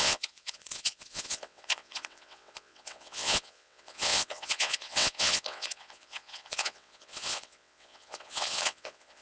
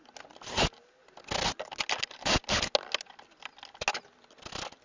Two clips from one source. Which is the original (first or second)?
second